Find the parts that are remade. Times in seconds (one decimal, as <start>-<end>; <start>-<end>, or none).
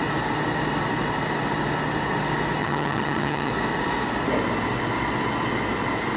2.6-3.5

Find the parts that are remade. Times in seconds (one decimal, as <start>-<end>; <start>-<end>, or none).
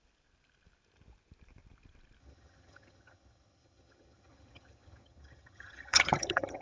2.2-6.6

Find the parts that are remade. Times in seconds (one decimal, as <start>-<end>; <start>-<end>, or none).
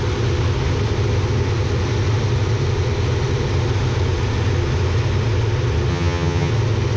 5.9-6.5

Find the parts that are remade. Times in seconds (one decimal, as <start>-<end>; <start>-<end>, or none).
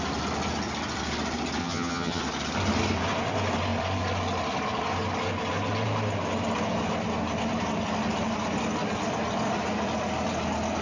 1.6-2.2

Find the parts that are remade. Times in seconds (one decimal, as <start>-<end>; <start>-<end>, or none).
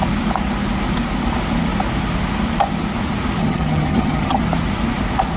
3.4-4.4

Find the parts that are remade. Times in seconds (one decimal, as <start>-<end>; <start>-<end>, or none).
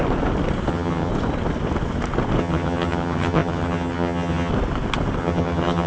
0.7-1.1; 2.4-4.5; 5.2-5.9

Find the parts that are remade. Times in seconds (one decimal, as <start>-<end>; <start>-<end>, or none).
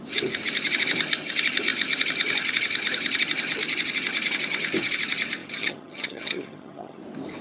5.4-7.0